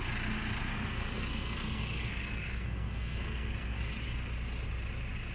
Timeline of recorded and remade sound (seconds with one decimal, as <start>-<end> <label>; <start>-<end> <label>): 0.0-0.7 recorded; 0.7-3.9 remade; 3.9-5.3 recorded